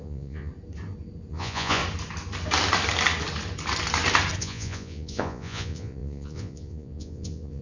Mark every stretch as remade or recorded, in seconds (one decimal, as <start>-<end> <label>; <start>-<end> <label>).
0.0-0.5 remade; 0.5-1.3 recorded; 1.3-1.8 remade; 1.8-4.4 recorded; 4.4-7.6 remade